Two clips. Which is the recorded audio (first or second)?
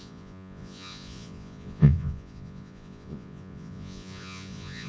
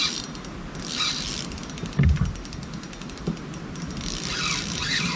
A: second